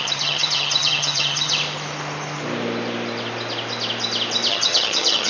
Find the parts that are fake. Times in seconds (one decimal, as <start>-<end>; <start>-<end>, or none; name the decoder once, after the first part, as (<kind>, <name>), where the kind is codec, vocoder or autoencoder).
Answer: 0.0-1.5 (vocoder, HiFi-GAN); 4.5-5.3